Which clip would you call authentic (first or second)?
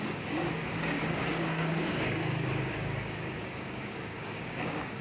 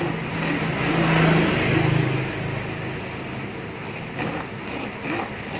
second